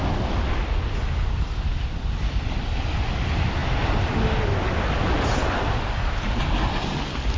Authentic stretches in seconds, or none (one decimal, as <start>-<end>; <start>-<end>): 0.0-7.4